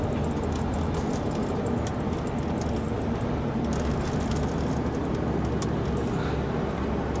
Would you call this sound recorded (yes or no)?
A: yes